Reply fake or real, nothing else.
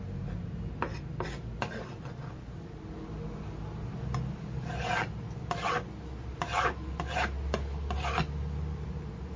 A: real